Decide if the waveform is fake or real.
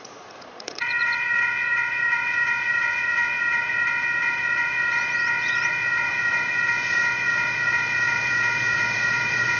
fake